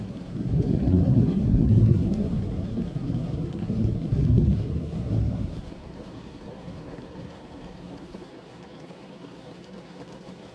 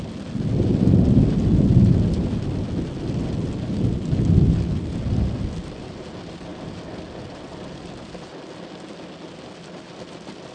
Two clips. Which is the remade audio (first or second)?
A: first